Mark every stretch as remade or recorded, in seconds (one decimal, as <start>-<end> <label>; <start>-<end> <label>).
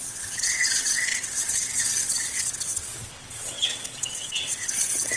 0.0-5.2 remade